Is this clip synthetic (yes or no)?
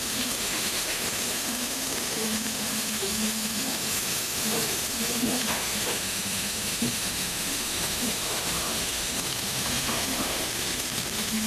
yes